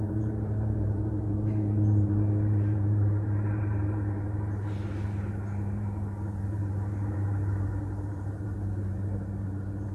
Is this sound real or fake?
fake